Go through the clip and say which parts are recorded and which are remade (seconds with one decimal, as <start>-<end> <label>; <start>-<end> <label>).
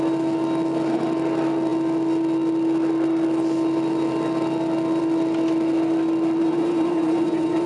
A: 0.0-6.4 recorded; 6.4-7.7 remade